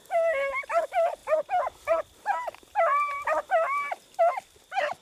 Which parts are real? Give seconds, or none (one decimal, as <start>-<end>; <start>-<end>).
0.0-5.0